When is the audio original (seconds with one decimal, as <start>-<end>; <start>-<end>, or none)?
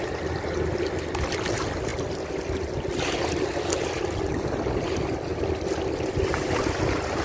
0.0-7.2